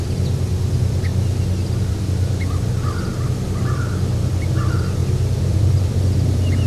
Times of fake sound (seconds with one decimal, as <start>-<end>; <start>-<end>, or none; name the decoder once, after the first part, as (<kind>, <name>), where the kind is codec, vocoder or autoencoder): 0.0-1.1 (vocoder, BigVGAN v2); 1.8-6.7